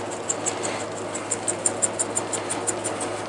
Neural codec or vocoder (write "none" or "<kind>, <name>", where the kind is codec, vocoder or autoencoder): none